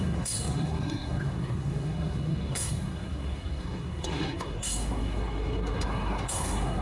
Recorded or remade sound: remade